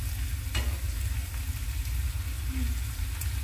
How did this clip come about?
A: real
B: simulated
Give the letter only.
A